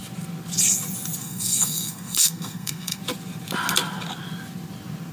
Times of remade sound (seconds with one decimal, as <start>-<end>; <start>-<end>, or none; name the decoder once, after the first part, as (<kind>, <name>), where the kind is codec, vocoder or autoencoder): 1.2-3.0 (codec, SNAC)